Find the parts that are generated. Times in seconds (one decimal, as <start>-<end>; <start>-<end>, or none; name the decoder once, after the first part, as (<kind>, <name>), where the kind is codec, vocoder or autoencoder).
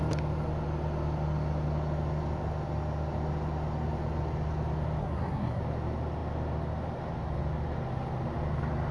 5.0-5.6 (codec, SNAC)